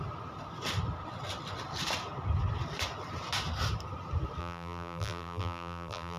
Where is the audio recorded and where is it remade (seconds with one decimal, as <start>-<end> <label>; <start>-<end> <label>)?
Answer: 0.0-4.4 recorded; 4.4-6.2 remade